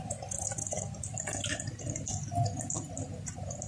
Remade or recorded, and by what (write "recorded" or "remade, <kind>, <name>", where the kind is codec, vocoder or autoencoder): recorded